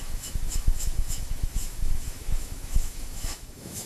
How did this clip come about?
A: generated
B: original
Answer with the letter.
A